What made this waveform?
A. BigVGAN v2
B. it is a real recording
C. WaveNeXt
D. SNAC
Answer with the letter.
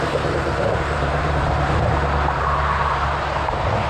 A